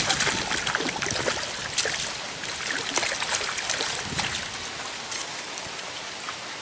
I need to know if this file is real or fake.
real